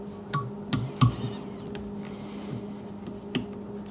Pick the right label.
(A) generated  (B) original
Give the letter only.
B